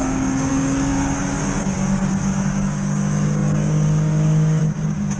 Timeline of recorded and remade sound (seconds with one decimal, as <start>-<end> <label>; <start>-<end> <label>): 0.0-5.2 remade